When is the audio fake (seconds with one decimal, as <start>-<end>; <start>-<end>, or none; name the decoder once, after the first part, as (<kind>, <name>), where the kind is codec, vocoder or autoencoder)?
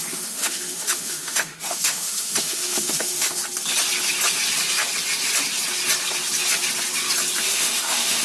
0.0-3.4 (autoencoder, DAC-VAE); 7.4-8.2